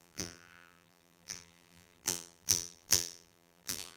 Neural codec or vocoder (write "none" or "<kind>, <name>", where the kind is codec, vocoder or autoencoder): vocoder, BigVGAN v2